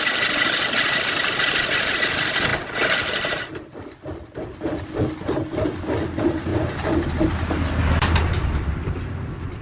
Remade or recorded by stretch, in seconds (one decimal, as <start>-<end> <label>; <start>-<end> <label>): 0.0-9.6 recorded